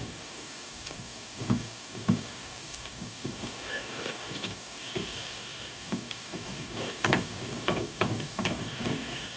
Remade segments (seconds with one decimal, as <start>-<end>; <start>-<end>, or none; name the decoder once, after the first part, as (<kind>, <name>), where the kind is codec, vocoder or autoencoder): 0.0-9.4 (codec, DAC)